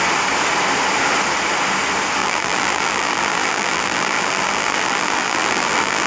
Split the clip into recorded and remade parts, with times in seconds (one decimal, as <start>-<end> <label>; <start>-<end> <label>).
0.0-2.2 recorded; 2.2-6.1 remade